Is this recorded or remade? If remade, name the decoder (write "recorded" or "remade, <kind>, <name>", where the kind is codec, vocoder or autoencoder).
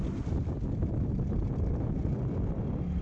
recorded